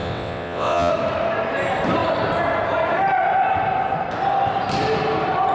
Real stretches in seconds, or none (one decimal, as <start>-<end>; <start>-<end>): 0.9-5.5